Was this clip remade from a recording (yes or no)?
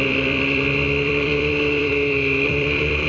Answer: yes